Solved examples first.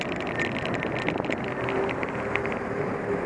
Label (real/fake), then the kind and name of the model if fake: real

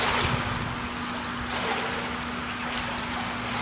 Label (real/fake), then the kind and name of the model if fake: real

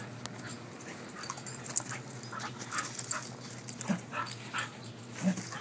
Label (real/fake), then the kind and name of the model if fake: real